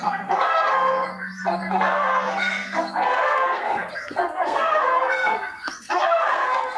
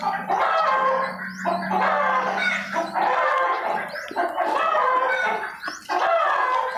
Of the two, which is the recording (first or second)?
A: second